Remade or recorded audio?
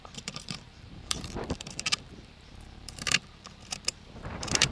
remade